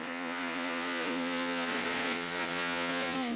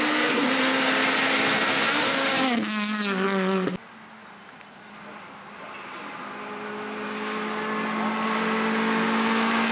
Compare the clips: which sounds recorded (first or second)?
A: second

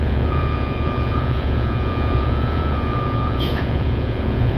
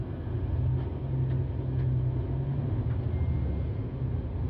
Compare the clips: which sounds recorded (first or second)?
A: second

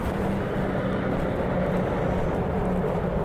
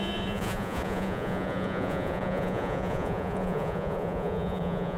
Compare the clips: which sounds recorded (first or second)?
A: first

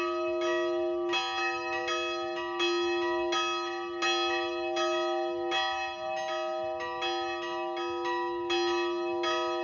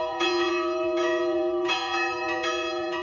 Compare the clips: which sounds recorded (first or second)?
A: first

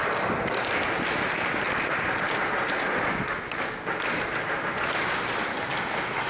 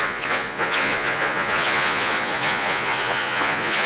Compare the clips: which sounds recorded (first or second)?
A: first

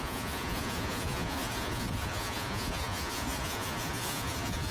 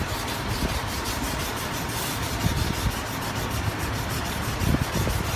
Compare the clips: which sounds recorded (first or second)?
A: second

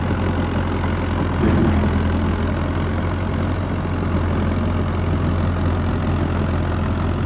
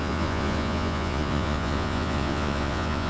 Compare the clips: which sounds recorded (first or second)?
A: first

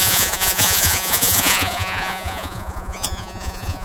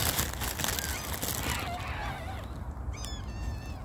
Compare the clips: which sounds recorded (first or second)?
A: second